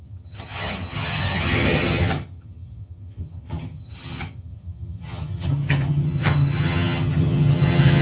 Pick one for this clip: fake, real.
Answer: fake